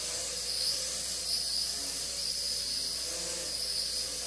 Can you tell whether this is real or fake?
real